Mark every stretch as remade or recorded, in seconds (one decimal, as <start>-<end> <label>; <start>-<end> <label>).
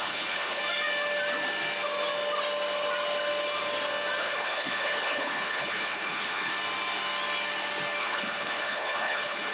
0.0-0.6 remade; 0.6-4.2 recorded; 4.2-6.5 remade; 6.5-8.0 recorded; 8.0-9.5 remade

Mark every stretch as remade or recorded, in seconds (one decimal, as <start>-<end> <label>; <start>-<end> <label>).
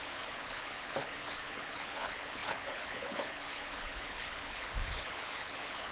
0.0-5.9 remade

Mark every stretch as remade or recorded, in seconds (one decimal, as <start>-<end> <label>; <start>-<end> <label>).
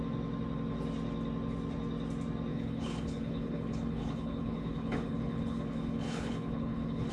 0.0-2.5 recorded; 2.5-7.1 remade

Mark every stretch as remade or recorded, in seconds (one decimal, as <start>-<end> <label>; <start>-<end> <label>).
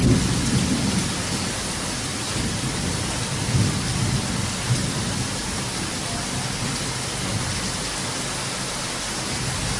0.0-9.8 recorded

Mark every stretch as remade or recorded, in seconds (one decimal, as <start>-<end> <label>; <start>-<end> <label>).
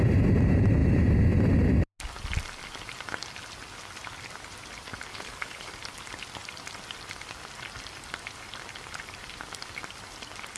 0.0-5.1 recorded; 5.1-5.7 remade; 5.7-10.6 recorded